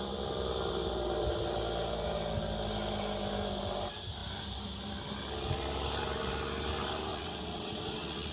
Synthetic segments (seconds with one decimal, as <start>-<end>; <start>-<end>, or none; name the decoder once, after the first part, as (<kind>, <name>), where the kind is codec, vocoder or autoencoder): 7.1-8.3 (vocoder, WaveNeXt)